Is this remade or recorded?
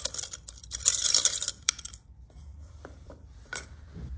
remade